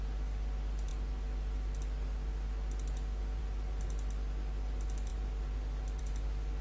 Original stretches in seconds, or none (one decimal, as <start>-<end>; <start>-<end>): 0.0-6.6